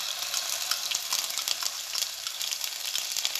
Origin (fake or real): real